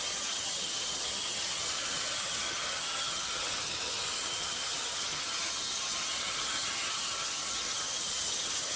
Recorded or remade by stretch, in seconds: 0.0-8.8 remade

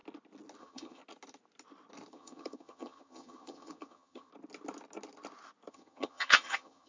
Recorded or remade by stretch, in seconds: 0.0-0.6 recorded; 0.6-1.0 remade; 1.0-2.1 recorded; 2.1-4.3 remade; 4.3-5.7 recorded; 5.7-6.9 remade

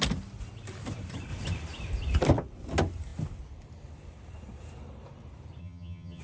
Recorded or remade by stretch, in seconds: 0.0-5.6 recorded; 5.6-6.2 remade

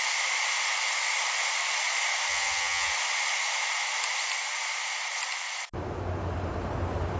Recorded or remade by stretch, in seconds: 0.0-2.3 recorded; 2.3-2.9 remade; 2.9-7.2 recorded

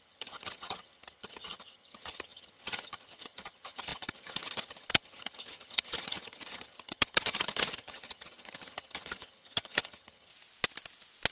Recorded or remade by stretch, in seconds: 0.0-10.3 remade; 10.3-11.3 recorded

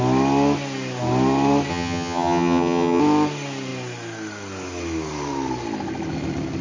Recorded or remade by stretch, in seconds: 0.0-1.7 recorded; 1.7-3.0 remade; 3.0-6.6 recorded

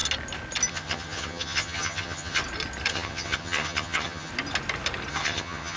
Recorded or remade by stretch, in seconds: 0.0-0.7 recorded; 0.7-2.4 remade; 2.4-2.9 recorded; 2.9-4.3 remade; 4.3-5.1 recorded; 5.1-5.8 remade